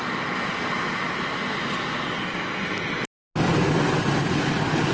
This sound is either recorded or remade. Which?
recorded